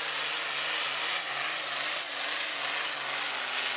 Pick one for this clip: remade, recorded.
recorded